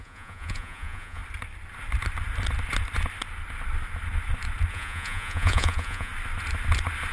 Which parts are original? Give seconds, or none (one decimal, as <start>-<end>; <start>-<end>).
1.2-4.7; 6.1-7.1